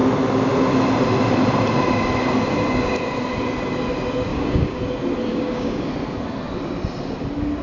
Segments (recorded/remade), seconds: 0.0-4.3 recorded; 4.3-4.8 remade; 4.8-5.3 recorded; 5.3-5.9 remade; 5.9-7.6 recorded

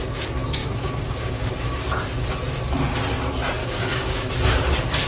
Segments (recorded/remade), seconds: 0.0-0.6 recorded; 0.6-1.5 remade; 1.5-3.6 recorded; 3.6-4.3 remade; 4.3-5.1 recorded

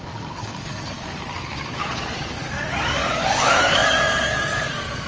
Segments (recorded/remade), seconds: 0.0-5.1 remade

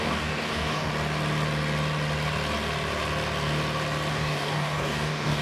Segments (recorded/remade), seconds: 0.0-0.9 remade; 0.9-4.1 recorded; 4.1-5.4 remade

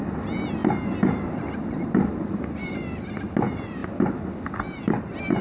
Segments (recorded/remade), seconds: 0.0-5.4 recorded

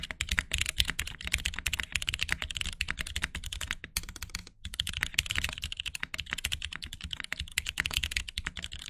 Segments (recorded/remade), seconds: 0.0-4.4 recorded; 4.4-4.9 remade; 4.9-7.5 recorded; 7.5-8.2 remade; 8.2-8.9 recorded

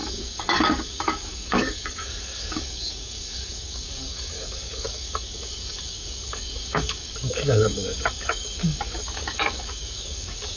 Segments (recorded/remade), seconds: 0.0-10.6 remade